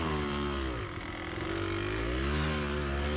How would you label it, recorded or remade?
recorded